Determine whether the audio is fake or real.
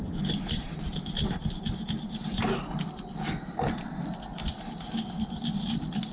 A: real